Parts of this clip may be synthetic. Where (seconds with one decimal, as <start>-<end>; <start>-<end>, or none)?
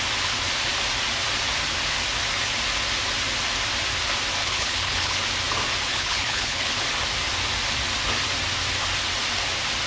4.4-5.2; 5.9-6.7